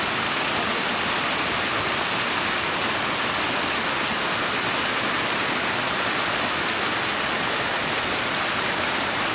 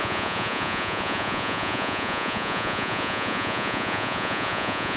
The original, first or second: first